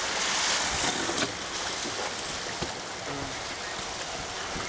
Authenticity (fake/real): real